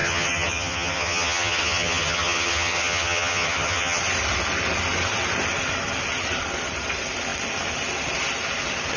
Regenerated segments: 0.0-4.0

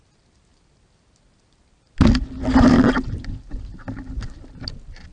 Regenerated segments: none

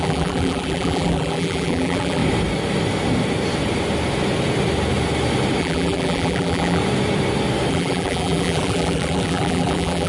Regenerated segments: 0.0-2.2; 5.6-6.8; 7.7-10.1

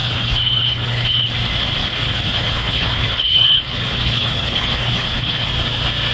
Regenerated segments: 0.0-1.3; 1.8-5.5

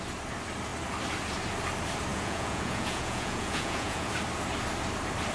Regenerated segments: 2.1-4.1

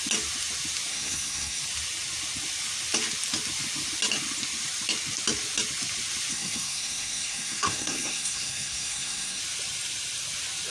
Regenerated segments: 0.9-1.6; 6.3-9.4

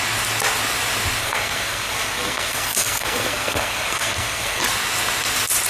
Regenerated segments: 1.2-4.6